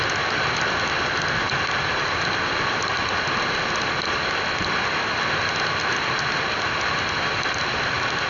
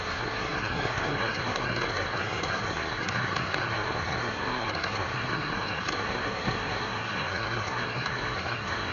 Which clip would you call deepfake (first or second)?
second